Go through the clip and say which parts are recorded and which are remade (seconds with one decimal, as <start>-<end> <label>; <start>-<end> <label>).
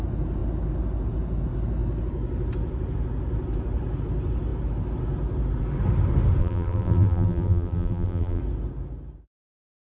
0.0-6.4 recorded; 6.4-8.4 remade; 8.4-10.0 recorded